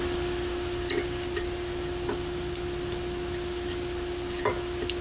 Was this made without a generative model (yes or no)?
yes